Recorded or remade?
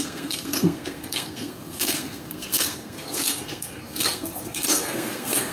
remade